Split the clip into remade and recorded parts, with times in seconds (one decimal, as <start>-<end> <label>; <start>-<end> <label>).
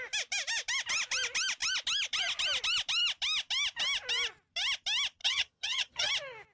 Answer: 0.0-5.2 recorded; 5.2-6.1 remade; 6.1-6.5 recorded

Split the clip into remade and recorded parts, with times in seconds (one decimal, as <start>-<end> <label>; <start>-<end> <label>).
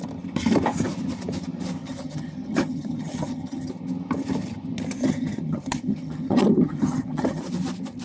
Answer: 0.0-1.8 recorded; 1.8-3.7 remade; 3.7-5.0 recorded; 5.0-7.4 remade; 7.4-8.0 recorded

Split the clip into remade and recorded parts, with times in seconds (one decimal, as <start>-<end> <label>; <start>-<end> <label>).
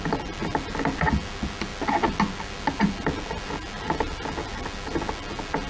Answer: 0.0-5.7 recorded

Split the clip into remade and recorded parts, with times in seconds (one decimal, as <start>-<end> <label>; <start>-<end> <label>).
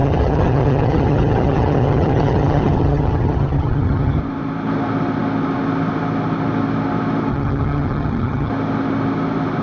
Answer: 0.0-4.2 remade; 4.2-7.3 recorded; 7.3-8.5 remade; 8.5-9.6 recorded